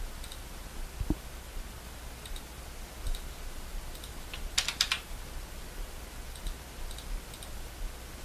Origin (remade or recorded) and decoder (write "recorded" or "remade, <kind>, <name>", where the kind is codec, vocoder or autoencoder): recorded